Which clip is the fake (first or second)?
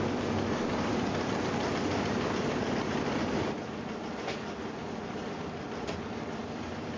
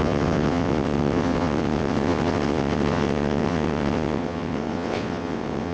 second